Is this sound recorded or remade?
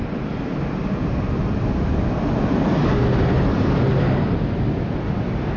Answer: recorded